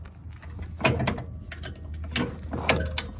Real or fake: real